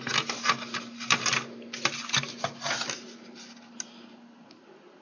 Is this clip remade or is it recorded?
recorded